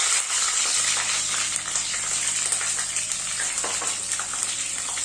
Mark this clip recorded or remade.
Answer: recorded